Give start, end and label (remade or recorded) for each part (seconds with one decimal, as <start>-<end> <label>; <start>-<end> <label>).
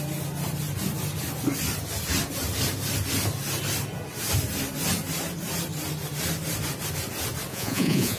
0.0-7.5 recorded; 7.5-8.2 remade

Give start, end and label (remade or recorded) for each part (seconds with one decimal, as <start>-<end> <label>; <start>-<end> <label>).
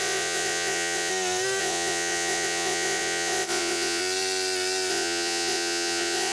0.0-1.1 remade; 1.1-1.6 recorded; 1.6-4.0 remade; 4.0-4.9 recorded; 4.9-6.3 remade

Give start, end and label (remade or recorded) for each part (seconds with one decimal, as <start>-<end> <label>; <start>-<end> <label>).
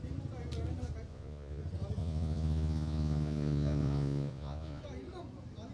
0.0-1.1 recorded; 1.1-1.6 remade; 1.6-2.0 recorded; 2.0-4.8 remade; 4.8-5.7 recorded